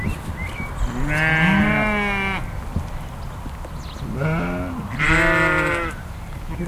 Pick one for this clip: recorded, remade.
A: recorded